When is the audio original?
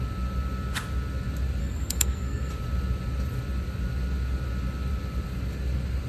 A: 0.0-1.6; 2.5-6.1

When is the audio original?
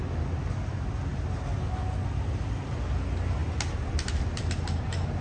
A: 0.0-5.2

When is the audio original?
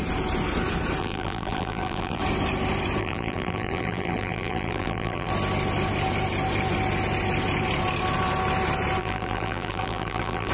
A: 0.0-1.0; 2.2-3.0; 5.3-9.0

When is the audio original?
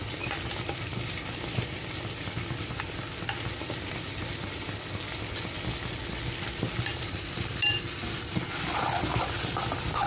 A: 0.0-6.9; 8.5-10.1